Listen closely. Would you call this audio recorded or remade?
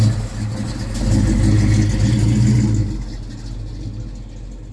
recorded